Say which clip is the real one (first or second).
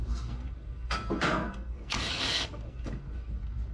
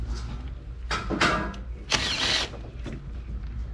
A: second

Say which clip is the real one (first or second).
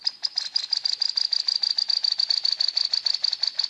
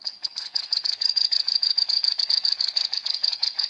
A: first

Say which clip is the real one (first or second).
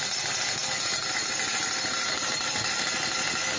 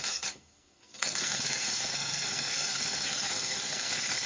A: first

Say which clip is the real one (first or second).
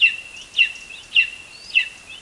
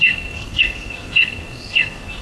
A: first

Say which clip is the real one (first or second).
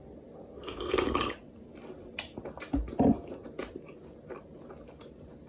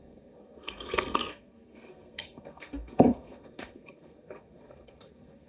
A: first